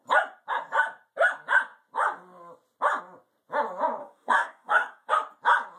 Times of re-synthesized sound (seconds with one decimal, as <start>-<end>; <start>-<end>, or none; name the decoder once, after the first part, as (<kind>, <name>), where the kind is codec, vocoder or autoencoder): 4.0-5.1 (codec, DAC)